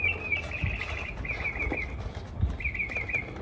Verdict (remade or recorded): recorded